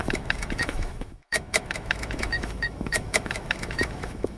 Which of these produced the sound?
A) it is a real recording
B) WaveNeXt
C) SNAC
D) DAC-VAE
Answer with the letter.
D